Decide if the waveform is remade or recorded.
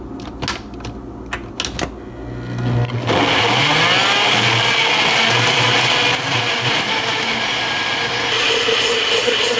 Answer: recorded